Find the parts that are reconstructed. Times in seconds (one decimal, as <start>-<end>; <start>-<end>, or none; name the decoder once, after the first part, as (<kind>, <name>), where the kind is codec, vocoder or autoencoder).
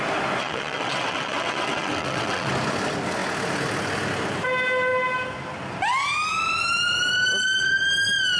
0.4-2.5 (vocoder, WaveNeXt)